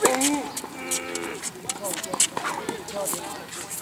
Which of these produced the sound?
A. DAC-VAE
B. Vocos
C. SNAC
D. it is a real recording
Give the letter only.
D